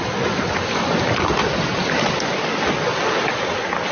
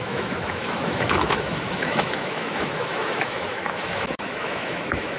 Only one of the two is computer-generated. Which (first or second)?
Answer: second